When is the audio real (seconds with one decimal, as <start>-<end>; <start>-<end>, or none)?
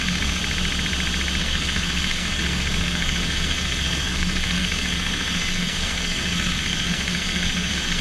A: 0.4-1.4